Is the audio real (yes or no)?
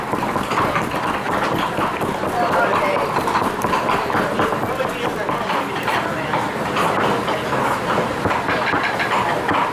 yes